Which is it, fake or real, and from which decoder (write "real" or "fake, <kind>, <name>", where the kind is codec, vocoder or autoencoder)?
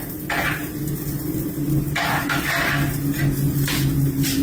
real